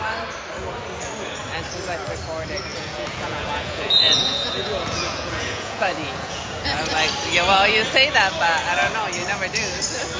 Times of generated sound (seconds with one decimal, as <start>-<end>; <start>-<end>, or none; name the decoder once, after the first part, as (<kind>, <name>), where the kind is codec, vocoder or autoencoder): 2.7-6.8 (vocoder, Vocos)